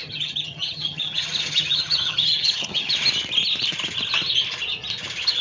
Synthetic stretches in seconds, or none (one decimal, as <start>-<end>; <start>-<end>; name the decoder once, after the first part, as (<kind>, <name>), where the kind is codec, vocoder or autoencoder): 0.0-2.9 (vocoder, HiFi-GAN)